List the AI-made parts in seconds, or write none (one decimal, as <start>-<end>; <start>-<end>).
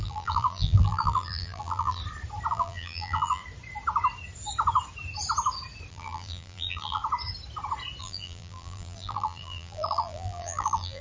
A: 0.0-2.0; 2.5-3.4; 5.9-7.0; 8.0-11.0